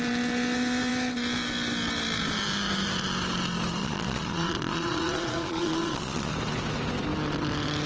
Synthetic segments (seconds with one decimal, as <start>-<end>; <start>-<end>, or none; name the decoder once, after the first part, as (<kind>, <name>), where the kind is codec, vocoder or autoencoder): 3.8-6.3 (vocoder, Vocos)